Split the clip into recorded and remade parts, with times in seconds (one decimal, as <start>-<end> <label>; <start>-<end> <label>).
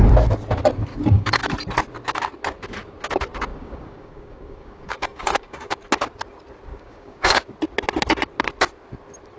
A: 0.0-0.9 recorded; 0.9-1.4 remade; 1.4-3.5 recorded; 3.5-5.8 remade; 5.8-6.7 recorded; 6.7-7.4 remade; 7.4-9.4 recorded